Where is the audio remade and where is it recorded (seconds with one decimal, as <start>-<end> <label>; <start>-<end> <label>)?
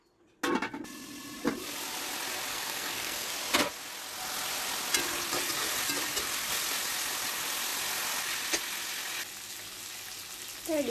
0.0-2.5 recorded; 2.5-3.3 remade; 3.3-10.9 recorded